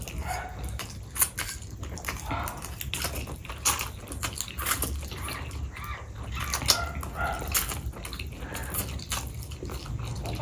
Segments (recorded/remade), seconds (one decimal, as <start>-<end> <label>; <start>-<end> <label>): 0.0-10.4 recorded